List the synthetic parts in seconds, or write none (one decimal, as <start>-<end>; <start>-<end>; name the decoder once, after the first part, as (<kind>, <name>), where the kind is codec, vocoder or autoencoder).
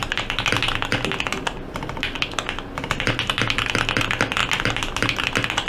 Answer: none